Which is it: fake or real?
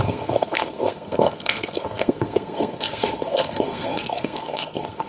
fake